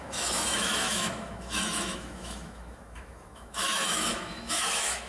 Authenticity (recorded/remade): remade